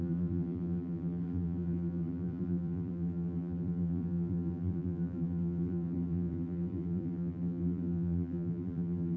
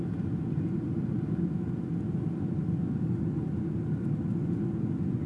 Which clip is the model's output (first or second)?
first